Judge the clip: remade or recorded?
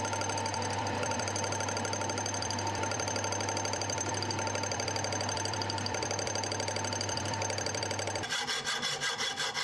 remade